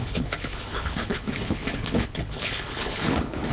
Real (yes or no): no